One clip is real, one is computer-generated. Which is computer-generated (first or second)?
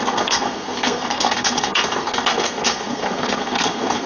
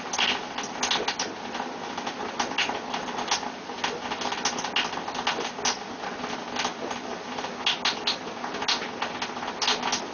first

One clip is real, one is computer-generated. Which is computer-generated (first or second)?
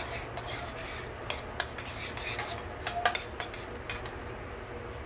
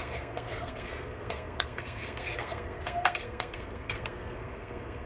second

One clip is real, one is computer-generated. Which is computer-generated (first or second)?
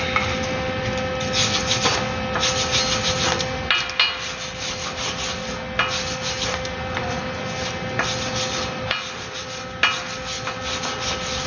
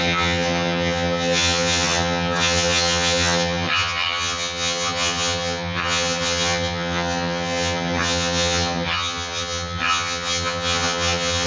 second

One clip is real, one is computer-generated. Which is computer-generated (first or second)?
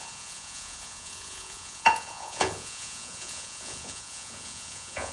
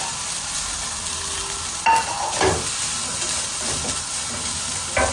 first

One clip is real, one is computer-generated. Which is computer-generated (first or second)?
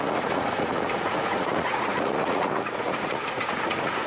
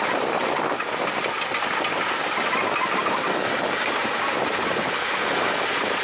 first